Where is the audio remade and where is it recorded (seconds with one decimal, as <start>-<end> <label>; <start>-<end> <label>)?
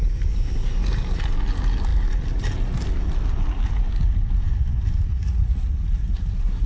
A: 0.0-5.1 recorded; 5.1-6.7 remade